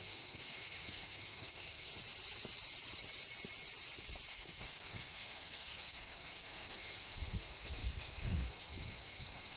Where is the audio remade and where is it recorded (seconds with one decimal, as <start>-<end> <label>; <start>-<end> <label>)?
0.0-1.9 remade; 1.9-4.3 recorded; 4.3-9.6 remade